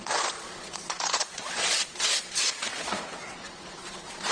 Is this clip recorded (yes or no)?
no